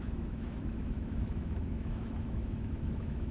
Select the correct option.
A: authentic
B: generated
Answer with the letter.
B